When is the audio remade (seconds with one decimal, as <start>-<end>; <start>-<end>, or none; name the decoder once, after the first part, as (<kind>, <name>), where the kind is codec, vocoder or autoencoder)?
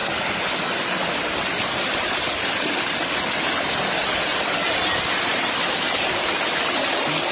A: 5.3-7.3 (vocoder, BigVGAN v2)